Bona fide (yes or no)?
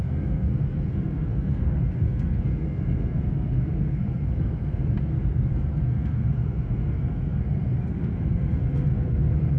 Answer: no